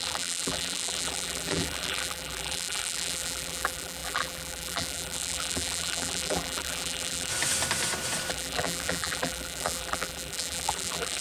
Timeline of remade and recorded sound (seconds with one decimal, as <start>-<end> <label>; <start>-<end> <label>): 0.0-7.3 remade; 7.3-8.3 recorded; 8.3-11.2 remade